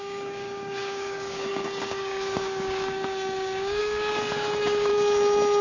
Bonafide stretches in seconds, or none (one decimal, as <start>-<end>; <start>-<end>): 4.9-5.6